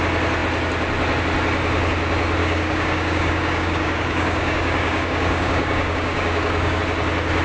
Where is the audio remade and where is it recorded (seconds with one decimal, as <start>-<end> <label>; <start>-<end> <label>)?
0.0-2.4 recorded; 2.4-6.8 remade; 6.8-7.4 recorded